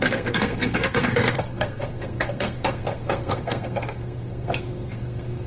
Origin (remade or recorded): remade